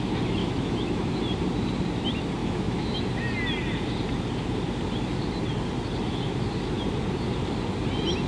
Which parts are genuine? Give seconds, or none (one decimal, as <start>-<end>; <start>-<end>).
0.0-0.4; 1.2-2.4; 3.0-8.3